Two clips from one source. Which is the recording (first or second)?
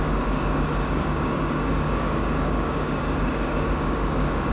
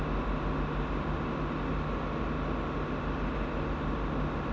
second